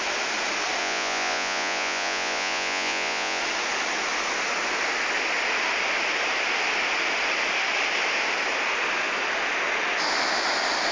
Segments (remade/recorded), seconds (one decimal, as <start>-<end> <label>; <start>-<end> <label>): 0.0-0.8 recorded; 0.8-3.4 remade; 3.4-10.9 recorded